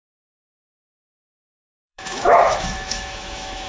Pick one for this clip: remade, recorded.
remade